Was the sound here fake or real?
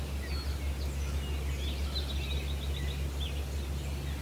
real